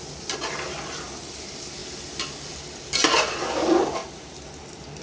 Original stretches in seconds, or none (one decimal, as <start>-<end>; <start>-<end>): 0.0-4.0